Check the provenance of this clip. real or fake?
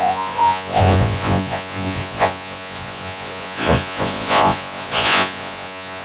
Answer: fake